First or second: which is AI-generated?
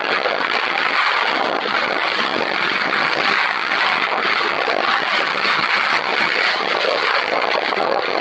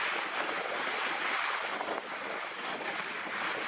first